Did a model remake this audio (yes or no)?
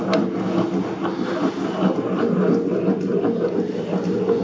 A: no